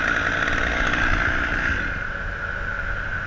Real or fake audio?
real